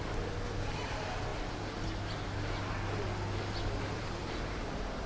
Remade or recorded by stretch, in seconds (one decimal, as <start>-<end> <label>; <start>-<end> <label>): 0.0-5.1 recorded